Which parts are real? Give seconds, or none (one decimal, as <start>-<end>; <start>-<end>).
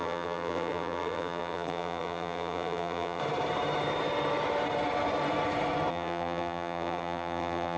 3.2-5.9